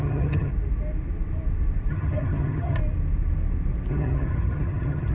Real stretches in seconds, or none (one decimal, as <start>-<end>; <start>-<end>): 0.5-1.9; 2.8-3.9

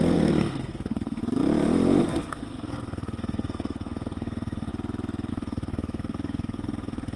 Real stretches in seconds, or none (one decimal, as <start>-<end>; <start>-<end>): 1.2-2.1; 4.7-5.3

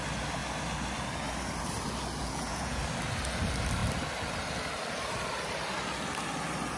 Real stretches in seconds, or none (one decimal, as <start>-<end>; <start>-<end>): 0.0-2.2; 2.8-6.8

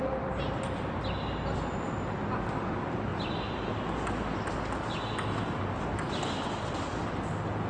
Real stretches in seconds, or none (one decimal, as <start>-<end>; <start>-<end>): 0.0-3.1; 3.7-7.7

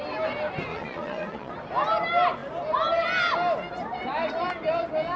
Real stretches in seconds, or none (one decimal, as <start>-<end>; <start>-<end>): 0.0-0.7; 1.5-5.2